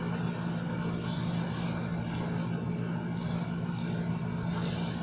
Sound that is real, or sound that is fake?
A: real